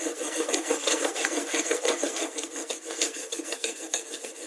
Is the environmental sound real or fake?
fake